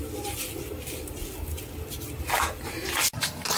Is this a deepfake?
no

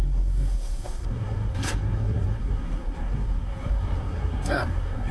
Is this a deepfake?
yes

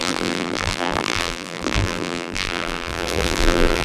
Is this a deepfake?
yes